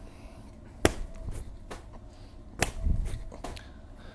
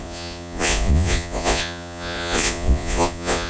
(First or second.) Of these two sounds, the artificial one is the second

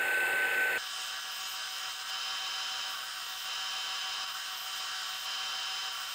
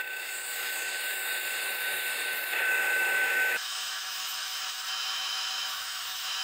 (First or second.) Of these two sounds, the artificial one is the second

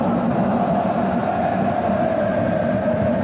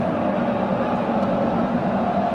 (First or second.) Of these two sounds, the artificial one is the first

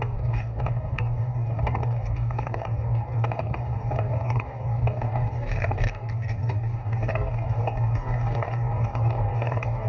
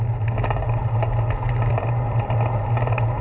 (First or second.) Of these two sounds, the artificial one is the first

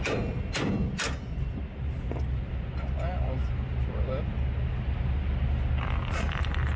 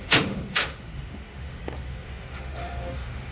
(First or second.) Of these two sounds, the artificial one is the second